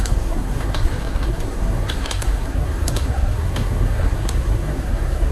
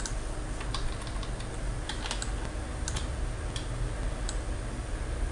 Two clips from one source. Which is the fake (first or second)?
first